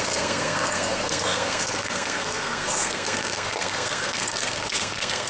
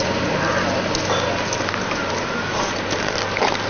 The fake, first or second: first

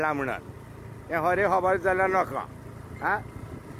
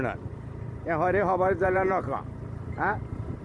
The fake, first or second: second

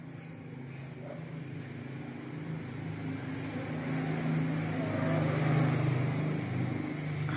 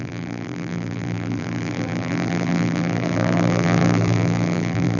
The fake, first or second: second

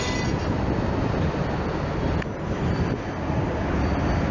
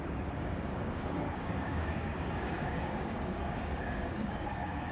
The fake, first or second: second